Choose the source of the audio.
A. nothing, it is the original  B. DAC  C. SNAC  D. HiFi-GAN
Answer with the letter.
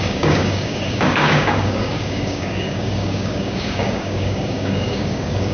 B